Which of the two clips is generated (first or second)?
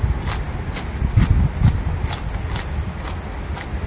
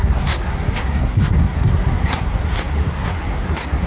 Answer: second